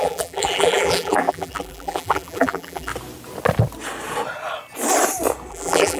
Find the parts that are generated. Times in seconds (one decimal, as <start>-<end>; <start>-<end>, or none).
0.0-2.9; 5.5-6.0